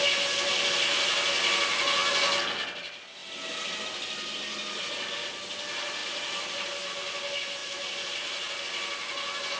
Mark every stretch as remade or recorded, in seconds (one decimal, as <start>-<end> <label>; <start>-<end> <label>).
0.0-7.6 recorded; 7.6-8.6 remade; 8.6-9.6 recorded